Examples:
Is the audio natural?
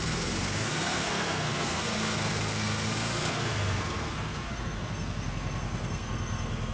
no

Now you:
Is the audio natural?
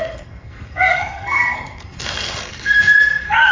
no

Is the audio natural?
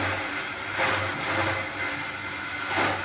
yes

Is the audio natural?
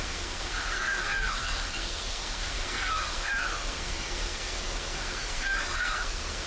no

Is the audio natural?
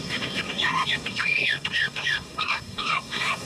no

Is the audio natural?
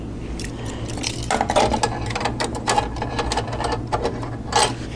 yes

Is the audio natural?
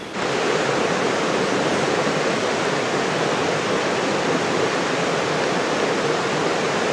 yes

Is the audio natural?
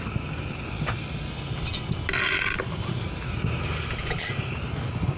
yes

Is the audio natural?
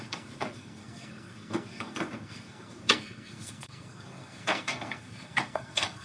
no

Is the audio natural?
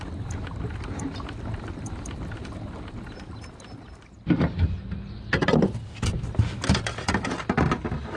yes